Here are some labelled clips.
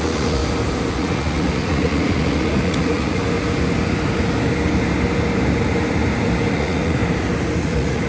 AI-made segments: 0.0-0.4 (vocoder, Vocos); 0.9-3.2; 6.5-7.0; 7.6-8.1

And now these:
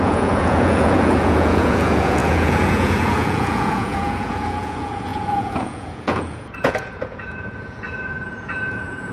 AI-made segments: 0.0-9.1 (vocoder, Vocos)